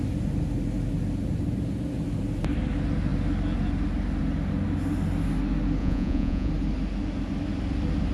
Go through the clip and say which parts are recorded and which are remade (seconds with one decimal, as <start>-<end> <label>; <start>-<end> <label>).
0.0-5.8 recorded; 5.8-6.5 remade; 6.5-8.1 recorded